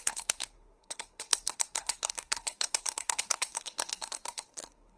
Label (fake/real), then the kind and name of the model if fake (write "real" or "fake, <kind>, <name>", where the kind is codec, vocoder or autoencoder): fake, codec, SNAC